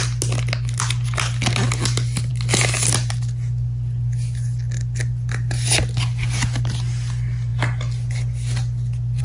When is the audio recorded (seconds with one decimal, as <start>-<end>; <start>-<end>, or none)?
0.0-9.2